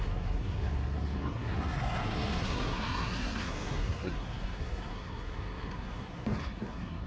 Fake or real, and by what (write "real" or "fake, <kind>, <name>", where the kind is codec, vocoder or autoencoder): fake, codec, SNAC